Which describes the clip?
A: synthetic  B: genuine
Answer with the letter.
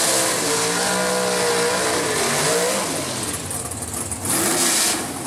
B